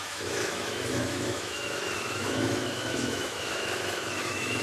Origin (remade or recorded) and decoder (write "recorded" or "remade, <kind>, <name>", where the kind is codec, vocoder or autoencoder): remade, autoencoder, DAC-VAE